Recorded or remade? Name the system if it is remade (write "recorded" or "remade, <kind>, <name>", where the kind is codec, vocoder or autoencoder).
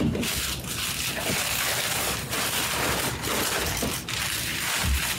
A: recorded